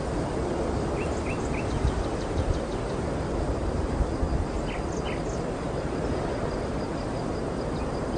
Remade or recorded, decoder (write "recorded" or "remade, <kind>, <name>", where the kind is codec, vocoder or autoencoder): recorded